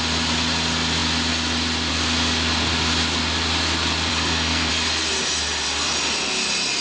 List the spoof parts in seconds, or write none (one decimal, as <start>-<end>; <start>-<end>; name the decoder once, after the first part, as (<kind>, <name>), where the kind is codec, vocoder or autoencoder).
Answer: 4.1-4.7 (codec, SNAC)